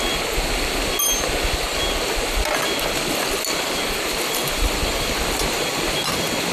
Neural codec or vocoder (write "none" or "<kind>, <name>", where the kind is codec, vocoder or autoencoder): none